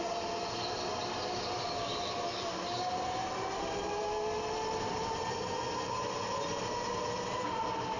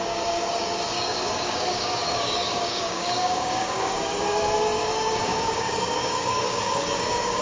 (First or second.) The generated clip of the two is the second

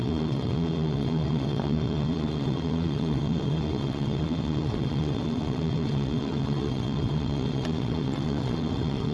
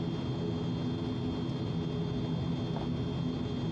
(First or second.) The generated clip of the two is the first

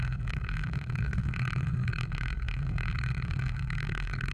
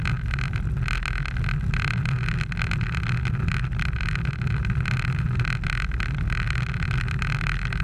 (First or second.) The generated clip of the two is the first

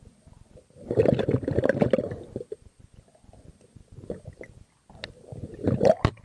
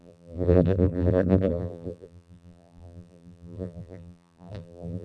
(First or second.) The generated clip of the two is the second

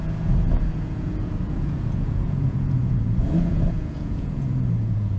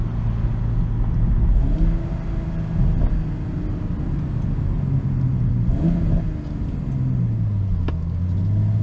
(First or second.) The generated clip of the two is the first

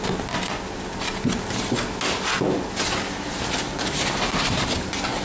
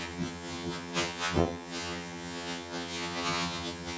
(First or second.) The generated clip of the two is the second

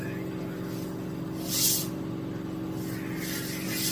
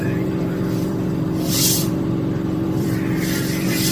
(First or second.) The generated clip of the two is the second